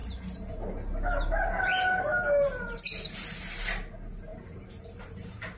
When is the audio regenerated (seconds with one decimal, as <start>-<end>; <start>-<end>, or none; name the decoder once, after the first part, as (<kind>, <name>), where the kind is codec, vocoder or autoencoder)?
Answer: 4.3-5.6 (vocoder, BigVGAN v2)